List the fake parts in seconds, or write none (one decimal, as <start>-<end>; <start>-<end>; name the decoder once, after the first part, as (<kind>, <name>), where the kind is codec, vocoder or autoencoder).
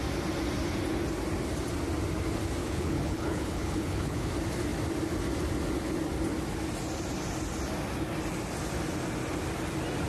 2.6-4.3 (codec, HILCodec)